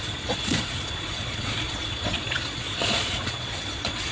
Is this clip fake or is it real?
fake